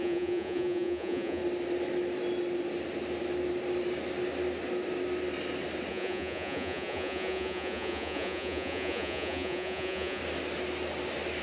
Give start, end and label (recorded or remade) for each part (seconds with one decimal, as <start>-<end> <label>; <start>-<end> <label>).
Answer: 0.0-1.4 remade; 1.4-5.9 recorded; 5.9-10.2 remade; 10.2-11.4 recorded